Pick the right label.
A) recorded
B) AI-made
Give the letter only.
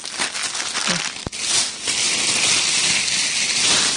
A